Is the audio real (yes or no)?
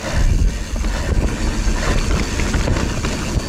yes